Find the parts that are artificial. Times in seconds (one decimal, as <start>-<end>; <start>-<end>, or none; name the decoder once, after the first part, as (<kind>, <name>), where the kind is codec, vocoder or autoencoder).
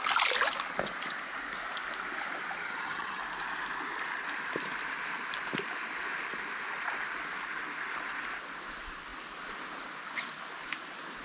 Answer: 2.6-3.2 (vocoder, HiFi-GAN)